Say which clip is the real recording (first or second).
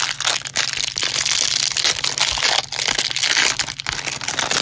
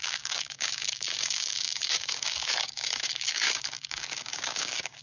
first